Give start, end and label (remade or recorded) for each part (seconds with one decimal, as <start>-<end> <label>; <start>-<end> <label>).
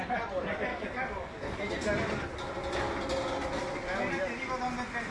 0.0-0.7 recorded; 0.7-1.7 remade; 1.7-5.1 recorded